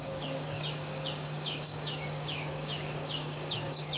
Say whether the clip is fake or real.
fake